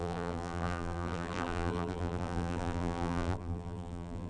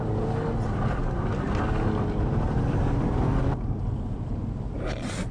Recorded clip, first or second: second